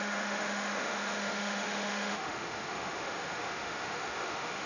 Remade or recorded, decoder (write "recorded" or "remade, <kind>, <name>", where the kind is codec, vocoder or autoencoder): remade, autoencoder, DAC-VAE